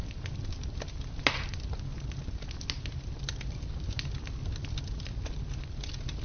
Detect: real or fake real